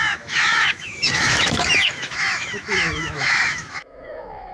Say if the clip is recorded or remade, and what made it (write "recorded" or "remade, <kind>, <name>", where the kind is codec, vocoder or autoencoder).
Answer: remade, autoencoder, DAC-VAE